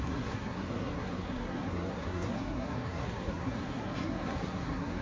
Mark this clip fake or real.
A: fake